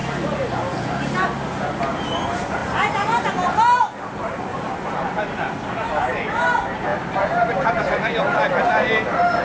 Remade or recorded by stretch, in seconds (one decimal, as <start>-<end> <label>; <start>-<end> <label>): 0.0-9.4 recorded